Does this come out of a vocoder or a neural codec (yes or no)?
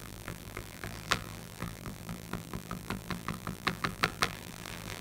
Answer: yes